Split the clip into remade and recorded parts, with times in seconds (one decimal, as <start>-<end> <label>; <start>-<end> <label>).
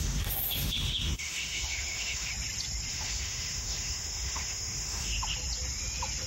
0.0-2.3 remade; 2.3-2.9 recorded; 2.9-5.1 remade; 5.1-6.3 recorded